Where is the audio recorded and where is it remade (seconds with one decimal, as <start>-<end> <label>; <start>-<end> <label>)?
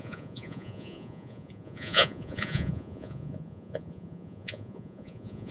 0.0-5.5 remade